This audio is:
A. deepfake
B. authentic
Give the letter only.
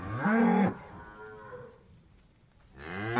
B